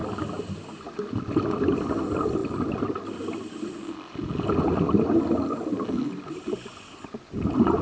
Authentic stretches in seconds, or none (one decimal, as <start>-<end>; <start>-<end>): 0.0-7.8